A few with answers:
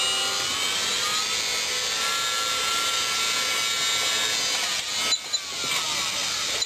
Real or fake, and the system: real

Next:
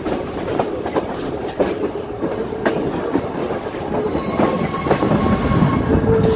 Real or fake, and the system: real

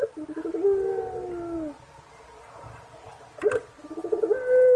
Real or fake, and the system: real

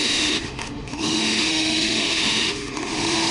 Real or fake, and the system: fake, autoencoder, DAC-VAE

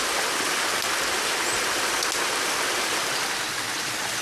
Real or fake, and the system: real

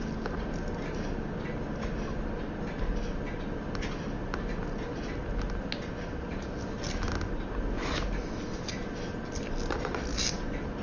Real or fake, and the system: real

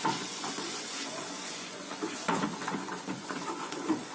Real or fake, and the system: fake, vocoder, Vocos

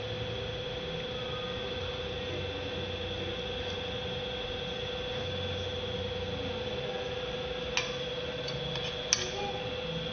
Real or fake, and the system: real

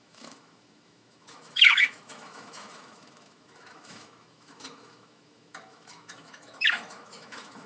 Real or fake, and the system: fake, autoencoder, DAC-VAE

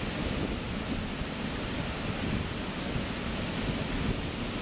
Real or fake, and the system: real